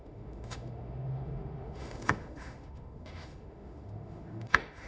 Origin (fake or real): fake